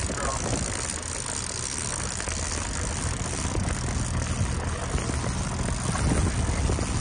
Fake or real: real